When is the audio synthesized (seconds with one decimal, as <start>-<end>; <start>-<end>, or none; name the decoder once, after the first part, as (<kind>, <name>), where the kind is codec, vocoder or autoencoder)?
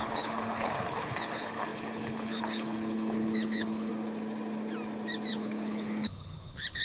0.0-3.9 (codec, HILCodec); 5.3-6.8